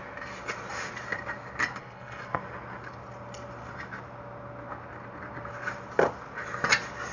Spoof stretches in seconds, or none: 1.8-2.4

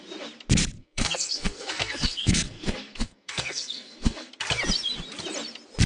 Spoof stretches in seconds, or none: 0.8-4.3

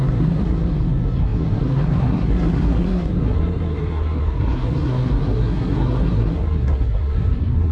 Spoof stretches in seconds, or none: 0.0-7.7